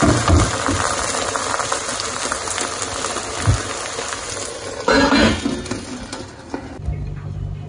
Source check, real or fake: real